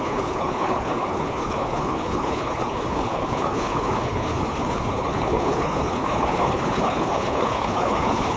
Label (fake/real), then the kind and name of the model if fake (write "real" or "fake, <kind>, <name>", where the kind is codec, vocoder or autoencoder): fake, codec, HILCodec